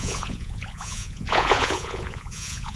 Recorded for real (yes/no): no